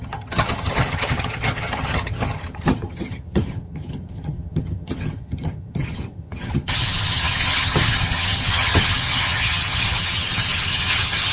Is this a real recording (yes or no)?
no